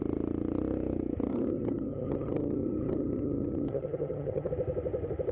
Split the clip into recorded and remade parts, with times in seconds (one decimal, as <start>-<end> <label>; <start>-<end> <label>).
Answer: 0.0-1.3 recorded; 1.3-4.5 remade; 4.5-5.3 recorded